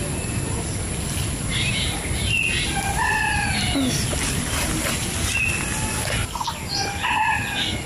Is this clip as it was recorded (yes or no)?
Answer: yes